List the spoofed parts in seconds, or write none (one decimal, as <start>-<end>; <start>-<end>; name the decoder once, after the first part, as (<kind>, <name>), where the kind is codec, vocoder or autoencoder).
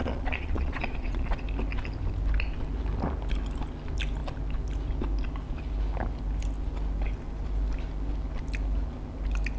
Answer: 0.0-1.4 (vocoder, Vocos)